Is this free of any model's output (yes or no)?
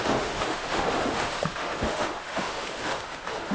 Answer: no